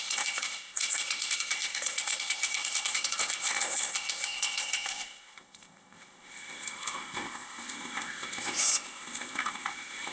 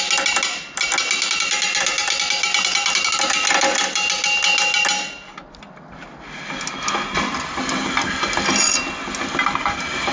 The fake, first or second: first